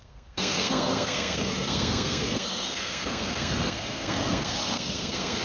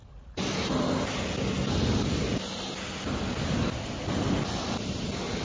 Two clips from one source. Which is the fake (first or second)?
first